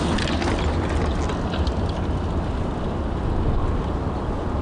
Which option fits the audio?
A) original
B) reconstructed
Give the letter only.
A